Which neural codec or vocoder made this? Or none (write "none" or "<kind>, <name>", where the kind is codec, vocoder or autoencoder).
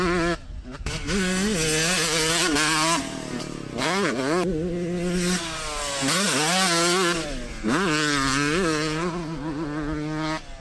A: none